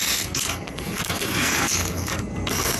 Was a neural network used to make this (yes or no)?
yes